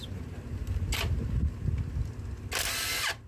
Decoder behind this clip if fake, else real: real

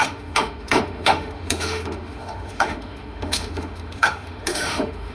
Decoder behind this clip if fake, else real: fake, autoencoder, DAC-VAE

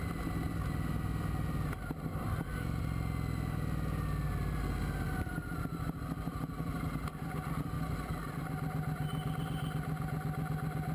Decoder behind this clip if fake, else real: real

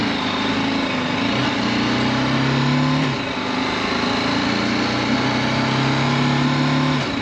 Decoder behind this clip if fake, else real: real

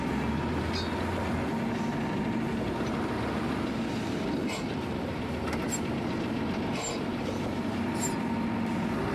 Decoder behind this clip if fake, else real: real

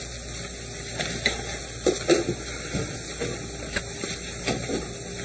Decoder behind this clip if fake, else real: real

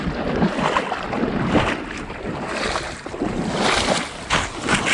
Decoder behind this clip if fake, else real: real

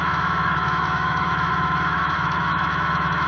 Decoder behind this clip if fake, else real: fake, autoencoder, DAC-VAE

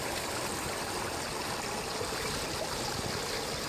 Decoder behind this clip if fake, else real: real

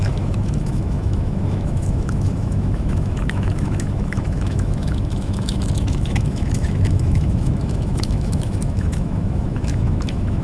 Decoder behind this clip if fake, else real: fake, autoencoder, DAC-VAE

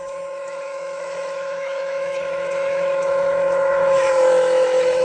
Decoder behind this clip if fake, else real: fake, autoencoder, DAC-VAE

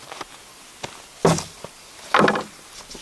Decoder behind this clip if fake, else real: real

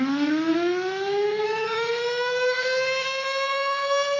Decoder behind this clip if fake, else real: fake, autoencoder, DAC-VAE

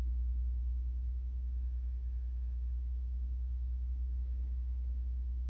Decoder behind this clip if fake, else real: fake, autoencoder, DAC-VAE